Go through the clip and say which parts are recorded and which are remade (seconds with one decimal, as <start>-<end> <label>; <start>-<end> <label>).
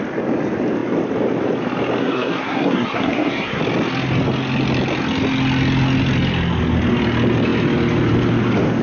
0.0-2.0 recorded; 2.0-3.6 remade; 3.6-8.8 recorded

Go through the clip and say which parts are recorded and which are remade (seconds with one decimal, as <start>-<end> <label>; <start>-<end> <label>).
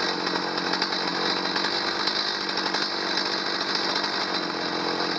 0.0-5.2 recorded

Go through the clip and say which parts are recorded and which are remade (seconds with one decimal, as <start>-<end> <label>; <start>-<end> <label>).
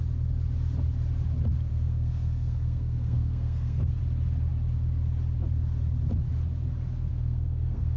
0.0-1.7 recorded; 1.7-4.0 remade; 4.0-7.1 recorded; 7.1-8.0 remade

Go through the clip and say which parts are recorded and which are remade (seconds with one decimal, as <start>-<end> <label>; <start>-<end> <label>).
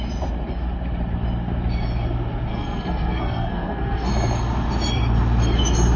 0.0-2.5 recorded; 2.5-4.1 remade; 4.1-6.0 recorded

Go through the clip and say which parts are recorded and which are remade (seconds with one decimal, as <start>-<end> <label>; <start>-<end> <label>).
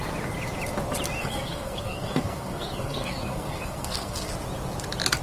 0.0-1.2 recorded; 1.2-4.3 remade; 4.3-5.2 recorded